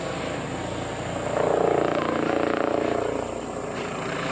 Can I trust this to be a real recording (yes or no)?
yes